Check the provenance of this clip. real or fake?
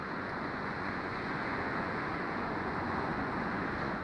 fake